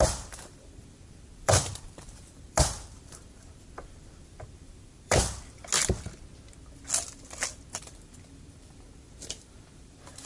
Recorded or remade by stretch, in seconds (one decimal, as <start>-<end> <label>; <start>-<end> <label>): 0.0-5.7 remade; 5.7-7.8 recorded; 7.8-10.3 remade